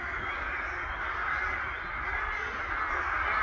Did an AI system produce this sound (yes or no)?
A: no